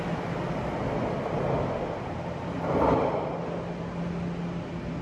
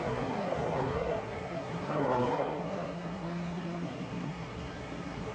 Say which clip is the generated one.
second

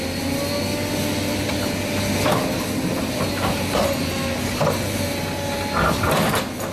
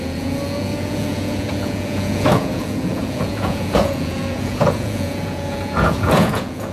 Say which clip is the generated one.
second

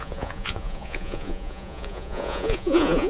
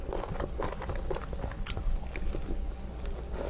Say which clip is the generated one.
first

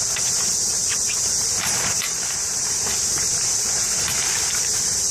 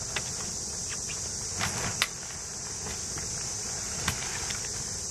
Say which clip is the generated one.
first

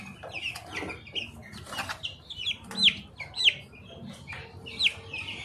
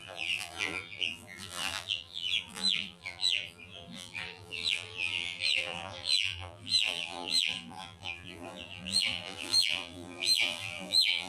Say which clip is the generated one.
second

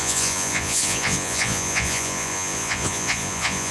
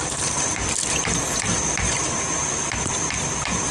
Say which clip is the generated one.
first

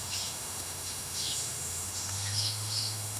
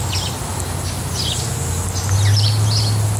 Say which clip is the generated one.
first